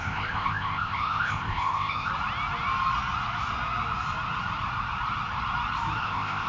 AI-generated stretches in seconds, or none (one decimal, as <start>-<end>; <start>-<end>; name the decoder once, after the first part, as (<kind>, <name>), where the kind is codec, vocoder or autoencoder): 0.0-2.1 (codec, ZipCodec); 6.0-6.5

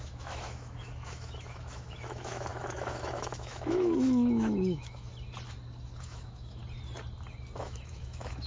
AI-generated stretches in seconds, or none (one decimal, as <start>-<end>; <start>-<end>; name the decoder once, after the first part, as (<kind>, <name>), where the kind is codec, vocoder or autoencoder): 0.0-5.1 (autoencoder, DAC-VAE); 6.0-6.6; 7.6-8.5

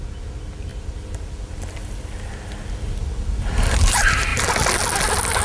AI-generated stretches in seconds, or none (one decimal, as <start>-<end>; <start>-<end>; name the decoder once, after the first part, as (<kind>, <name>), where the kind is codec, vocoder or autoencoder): none

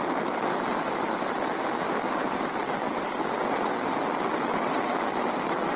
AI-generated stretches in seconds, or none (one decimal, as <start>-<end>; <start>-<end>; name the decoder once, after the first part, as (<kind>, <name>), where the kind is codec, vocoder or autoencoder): none

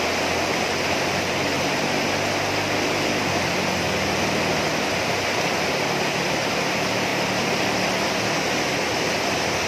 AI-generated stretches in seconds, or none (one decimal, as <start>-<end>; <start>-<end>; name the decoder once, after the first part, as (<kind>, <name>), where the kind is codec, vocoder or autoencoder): none

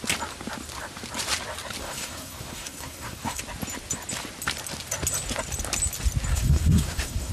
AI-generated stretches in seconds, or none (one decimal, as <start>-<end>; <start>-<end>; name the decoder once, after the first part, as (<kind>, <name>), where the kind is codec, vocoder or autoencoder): 1.8-3.4 (codec, SNAC); 6.3-7.3

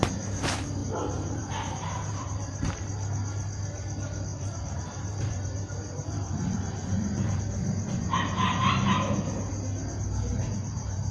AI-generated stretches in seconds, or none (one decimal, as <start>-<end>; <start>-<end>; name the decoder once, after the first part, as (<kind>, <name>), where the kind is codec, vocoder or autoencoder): 0.8-2.7 (vocoder, BigVGAN v2); 4.3-7.4; 10.3-11.1